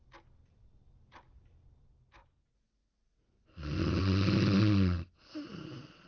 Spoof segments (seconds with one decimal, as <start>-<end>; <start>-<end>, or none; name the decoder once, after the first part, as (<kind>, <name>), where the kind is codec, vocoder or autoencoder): none